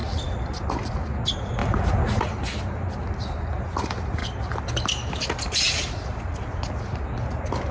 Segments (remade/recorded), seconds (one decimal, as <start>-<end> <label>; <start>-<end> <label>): 0.0-7.7 recorded